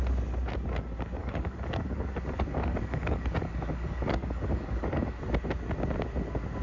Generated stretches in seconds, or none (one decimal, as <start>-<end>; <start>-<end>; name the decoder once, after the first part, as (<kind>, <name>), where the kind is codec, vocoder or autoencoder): 1.2-5.2 (codec, DAC)